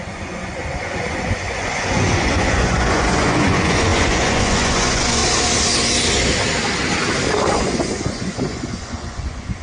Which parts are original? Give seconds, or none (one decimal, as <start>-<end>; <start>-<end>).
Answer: 5.2-7.5